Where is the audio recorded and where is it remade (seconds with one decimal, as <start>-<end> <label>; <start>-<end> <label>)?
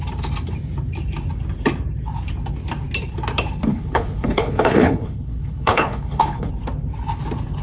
0.0-3.7 recorded; 3.7-6.5 remade; 6.5-7.6 recorded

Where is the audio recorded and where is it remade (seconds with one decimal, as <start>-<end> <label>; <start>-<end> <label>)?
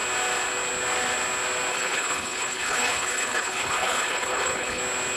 0.0-1.7 recorded; 1.7-4.8 remade; 4.8-5.2 recorded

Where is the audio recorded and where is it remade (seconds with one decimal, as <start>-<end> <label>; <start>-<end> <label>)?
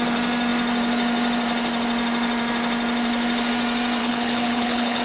0.0-4.0 recorded; 4.0-5.0 remade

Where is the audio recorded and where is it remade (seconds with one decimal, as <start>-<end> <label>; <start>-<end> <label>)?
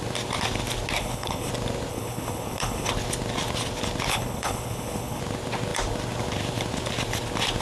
0.0-1.0 recorded; 1.0-1.5 remade; 1.5-1.9 recorded; 1.9-2.9 remade; 2.9-4.1 recorded; 4.1-5.2 remade; 5.2-7.6 recorded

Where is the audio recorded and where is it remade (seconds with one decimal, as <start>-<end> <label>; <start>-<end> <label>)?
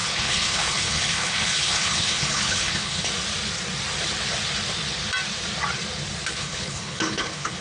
0.0-3.1 remade; 3.1-6.3 recorded; 6.3-7.6 remade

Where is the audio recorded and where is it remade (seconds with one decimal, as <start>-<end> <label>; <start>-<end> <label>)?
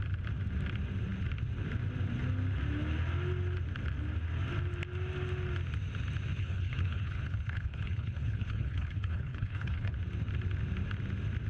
0.0-6.4 recorded; 6.4-9.9 remade; 9.9-11.5 recorded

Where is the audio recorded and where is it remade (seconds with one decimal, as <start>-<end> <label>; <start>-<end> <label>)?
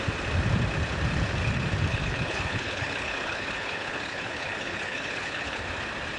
0.0-1.9 recorded; 1.9-5.6 remade; 5.6-6.2 recorded